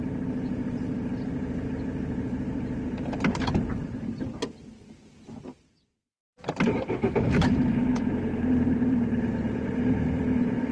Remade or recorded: remade